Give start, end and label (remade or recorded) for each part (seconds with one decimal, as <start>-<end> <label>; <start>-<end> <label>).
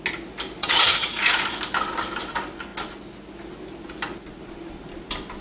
0.0-0.6 recorded; 0.6-1.6 remade; 1.6-5.4 recorded